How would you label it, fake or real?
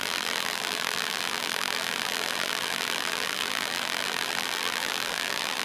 fake